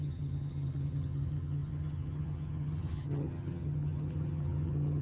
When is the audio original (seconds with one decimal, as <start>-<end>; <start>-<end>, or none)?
none